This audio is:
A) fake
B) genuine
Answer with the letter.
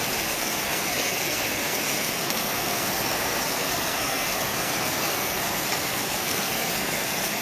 A